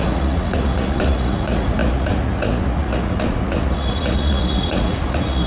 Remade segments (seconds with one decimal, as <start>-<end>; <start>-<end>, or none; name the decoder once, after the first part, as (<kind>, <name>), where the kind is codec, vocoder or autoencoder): 0.0-5.5 (vocoder, Vocos)